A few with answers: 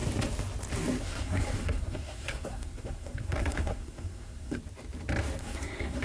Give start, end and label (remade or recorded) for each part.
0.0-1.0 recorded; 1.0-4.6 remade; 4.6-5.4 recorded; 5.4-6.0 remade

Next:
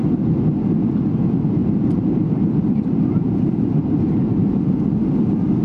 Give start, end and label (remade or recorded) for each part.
0.0-0.5 remade; 0.5-1.6 recorded; 1.6-4.7 remade; 4.7-5.6 recorded